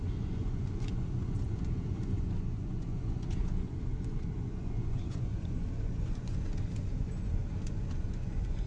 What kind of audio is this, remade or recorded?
remade